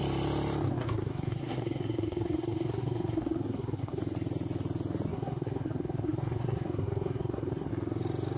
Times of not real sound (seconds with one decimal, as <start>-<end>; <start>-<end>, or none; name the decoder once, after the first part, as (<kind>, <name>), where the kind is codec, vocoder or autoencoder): 0.7-4.0 (codec, SNAC); 5.1-7.7